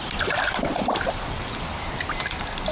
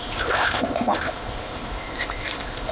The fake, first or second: second